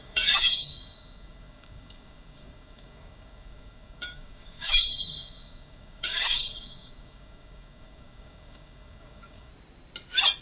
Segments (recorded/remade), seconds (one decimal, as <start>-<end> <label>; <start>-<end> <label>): 0.0-9.5 remade; 9.5-10.4 recorded